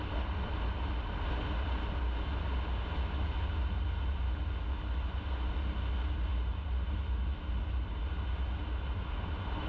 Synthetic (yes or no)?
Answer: no